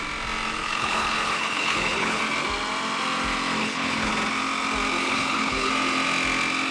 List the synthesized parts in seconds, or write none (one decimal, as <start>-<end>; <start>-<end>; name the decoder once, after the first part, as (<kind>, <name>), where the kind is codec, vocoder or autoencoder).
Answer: 0.6-2.2 (codec, HILCodec); 3.6-4.1; 5.0-5.7